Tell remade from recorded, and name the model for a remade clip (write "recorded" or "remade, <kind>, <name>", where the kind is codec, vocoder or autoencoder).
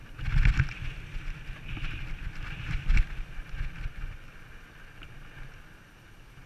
recorded